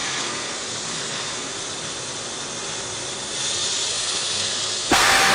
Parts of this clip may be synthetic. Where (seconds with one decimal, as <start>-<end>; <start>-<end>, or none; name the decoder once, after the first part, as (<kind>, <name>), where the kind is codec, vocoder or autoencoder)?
0.0-0.5 (codec, SNAC); 0.9-1.5; 3.9-5.3